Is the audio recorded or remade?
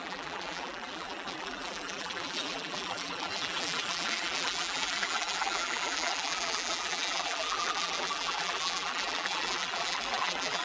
remade